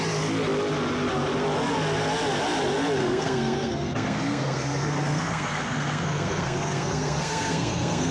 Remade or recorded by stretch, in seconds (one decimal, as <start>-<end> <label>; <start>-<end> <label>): 0.0-3.0 recorded; 3.0-8.1 remade